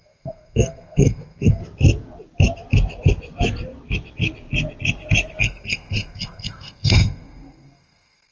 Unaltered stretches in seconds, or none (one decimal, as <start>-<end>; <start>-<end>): 1.6-5.4